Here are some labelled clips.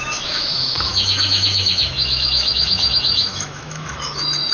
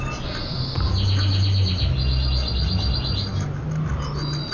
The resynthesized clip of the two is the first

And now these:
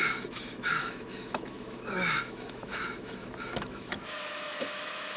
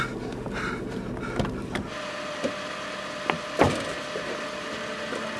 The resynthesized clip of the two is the first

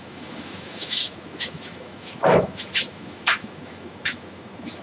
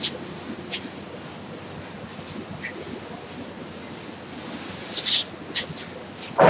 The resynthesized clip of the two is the first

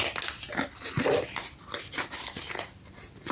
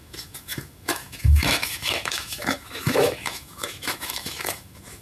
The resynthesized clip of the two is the second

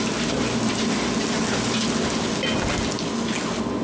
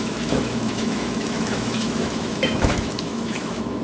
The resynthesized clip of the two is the second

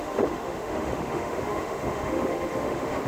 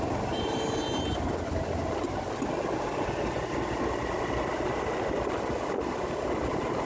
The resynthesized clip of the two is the first